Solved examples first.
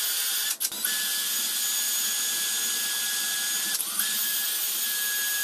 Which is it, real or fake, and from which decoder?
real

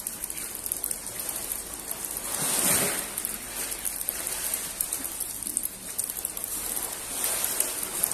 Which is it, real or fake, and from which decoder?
real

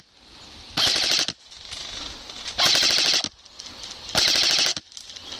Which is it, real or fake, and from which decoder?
real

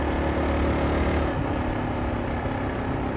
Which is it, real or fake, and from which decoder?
real